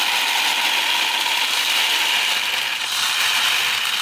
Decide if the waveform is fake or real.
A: real